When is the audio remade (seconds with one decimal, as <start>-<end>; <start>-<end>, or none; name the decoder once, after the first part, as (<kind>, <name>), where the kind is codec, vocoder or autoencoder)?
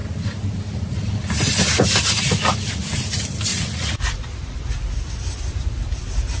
3.5-4.6 (vocoder, Vocos)